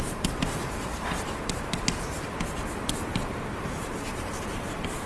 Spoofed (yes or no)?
yes